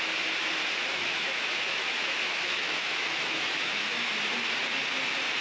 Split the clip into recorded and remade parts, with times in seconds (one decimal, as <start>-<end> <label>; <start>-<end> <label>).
0.0-0.9 recorded; 0.9-4.1 remade; 4.1-5.4 recorded